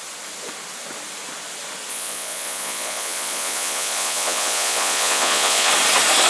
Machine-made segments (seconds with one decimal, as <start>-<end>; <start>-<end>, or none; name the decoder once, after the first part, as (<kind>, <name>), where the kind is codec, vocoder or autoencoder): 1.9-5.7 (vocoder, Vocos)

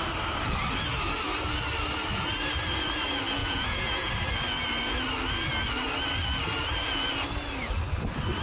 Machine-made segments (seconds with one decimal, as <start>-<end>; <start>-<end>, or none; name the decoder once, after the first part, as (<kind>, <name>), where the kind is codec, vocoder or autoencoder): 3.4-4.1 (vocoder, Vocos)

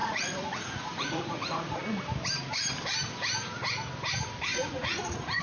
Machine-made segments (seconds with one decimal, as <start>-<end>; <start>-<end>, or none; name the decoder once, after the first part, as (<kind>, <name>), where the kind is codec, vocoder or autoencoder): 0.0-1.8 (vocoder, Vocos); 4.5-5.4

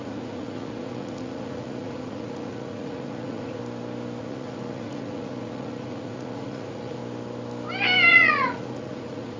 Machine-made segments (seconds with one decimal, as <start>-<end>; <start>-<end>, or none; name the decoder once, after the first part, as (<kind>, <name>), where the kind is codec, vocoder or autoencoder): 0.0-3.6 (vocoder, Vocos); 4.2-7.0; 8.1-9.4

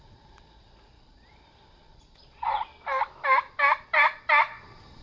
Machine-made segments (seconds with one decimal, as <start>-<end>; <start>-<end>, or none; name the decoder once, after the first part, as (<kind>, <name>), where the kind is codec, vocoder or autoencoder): 0.0-2.7 (vocoder, Vocos); 4.6-5.0